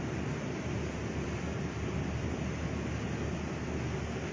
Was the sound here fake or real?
real